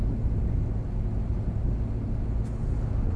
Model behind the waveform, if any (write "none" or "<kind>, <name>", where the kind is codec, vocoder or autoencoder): none